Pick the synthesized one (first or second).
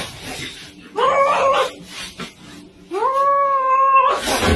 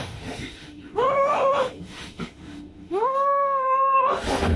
second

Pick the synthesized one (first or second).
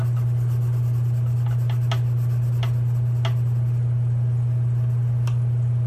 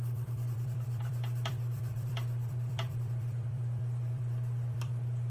second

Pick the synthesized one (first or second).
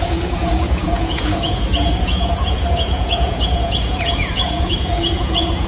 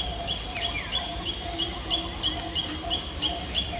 first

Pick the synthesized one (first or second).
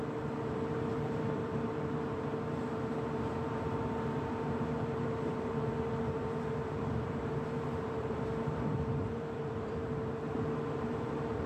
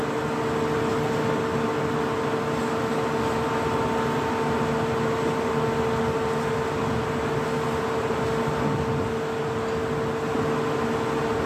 first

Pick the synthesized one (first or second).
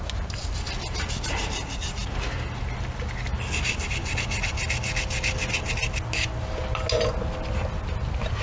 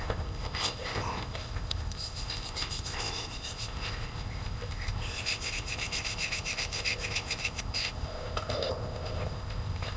second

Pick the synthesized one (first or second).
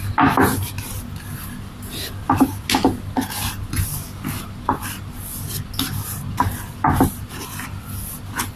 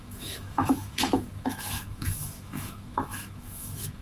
second